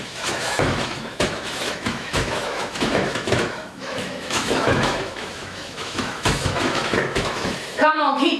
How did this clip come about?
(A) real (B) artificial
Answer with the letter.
B